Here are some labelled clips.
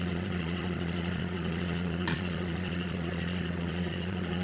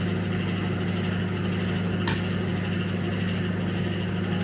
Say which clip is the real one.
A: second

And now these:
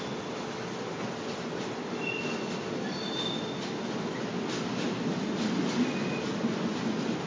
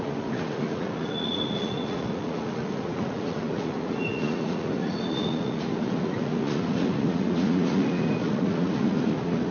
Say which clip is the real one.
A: first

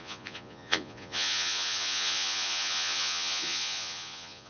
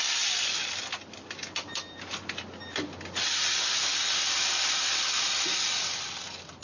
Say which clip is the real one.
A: second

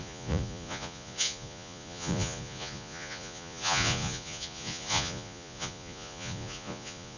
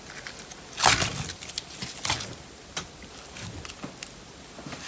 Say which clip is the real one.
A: second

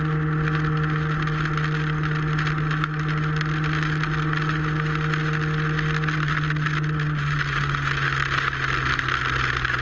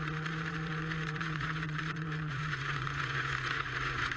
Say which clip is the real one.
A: first